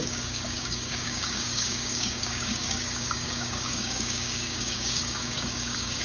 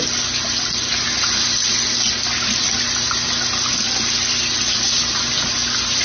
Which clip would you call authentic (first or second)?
second